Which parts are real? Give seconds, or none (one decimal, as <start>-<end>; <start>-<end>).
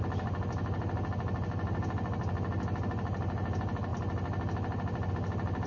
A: 0.0-5.7